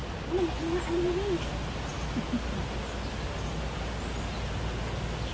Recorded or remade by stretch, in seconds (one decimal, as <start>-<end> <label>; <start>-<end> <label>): 0.0-5.3 recorded